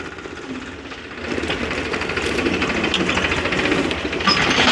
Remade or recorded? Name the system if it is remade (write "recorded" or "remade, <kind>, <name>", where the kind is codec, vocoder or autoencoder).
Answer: recorded